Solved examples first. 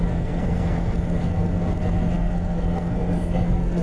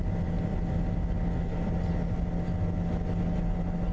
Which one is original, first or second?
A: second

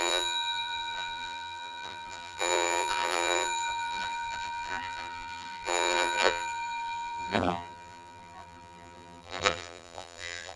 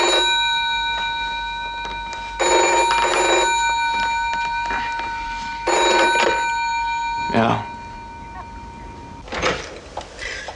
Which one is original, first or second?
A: second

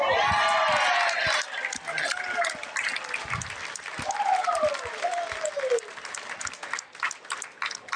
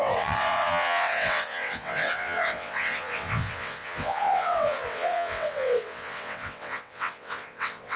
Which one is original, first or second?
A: first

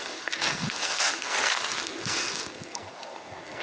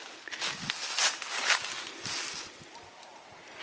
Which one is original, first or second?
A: second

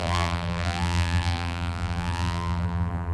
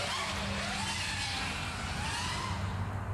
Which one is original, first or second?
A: second